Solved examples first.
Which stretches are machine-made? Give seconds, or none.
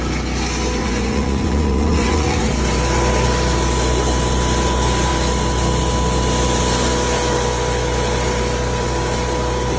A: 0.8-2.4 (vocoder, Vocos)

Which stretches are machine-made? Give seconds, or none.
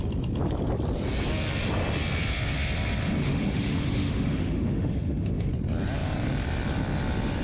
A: 3.2-5.5 (autoencoder, DAC-VAE)